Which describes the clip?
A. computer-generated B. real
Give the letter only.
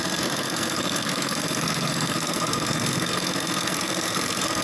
A